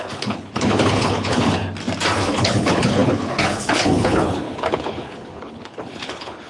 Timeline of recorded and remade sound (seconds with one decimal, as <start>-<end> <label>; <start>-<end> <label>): 0.0-1.6 remade; 1.6-2.3 recorded; 2.3-6.5 remade